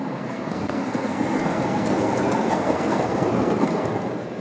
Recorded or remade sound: remade